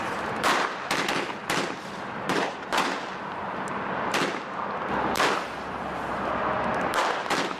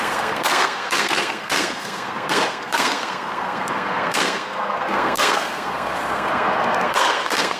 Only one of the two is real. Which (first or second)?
first